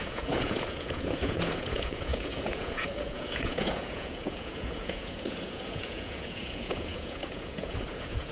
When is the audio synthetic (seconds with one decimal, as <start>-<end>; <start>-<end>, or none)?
0.0-8.3